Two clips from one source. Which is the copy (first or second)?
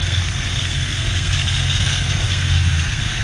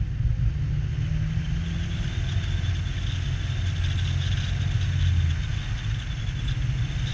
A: first